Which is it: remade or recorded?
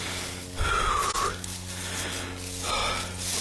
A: recorded